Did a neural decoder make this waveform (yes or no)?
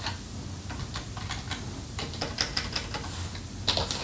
no